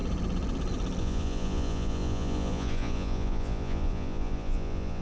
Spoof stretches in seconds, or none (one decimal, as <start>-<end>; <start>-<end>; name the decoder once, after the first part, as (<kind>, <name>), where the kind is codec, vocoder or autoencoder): 1.0-5.0 (vocoder, Vocos)